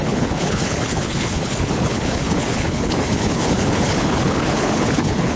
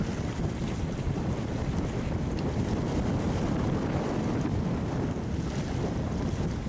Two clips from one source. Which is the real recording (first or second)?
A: second